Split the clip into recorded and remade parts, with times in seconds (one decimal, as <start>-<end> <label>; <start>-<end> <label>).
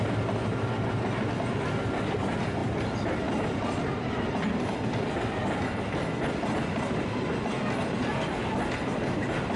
0.0-9.6 recorded